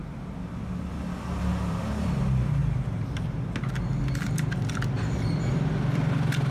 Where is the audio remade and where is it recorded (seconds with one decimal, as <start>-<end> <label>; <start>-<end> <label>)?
0.0-0.9 recorded; 0.9-2.6 remade; 2.6-4.0 recorded; 4.0-6.5 remade